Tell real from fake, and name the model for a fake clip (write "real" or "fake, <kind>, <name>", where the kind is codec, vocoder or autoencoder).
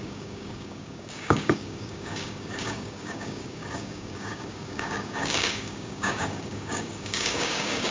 fake, codec, DAC